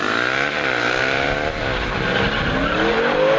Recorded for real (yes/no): yes